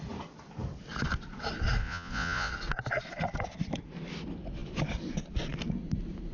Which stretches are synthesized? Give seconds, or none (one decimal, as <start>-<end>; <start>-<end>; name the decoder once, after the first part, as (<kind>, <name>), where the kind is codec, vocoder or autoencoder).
1.8-2.5 (vocoder, Vocos)